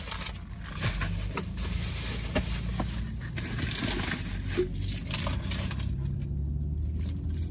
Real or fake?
real